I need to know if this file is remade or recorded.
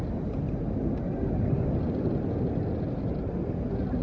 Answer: recorded